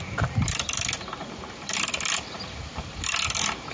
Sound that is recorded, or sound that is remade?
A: recorded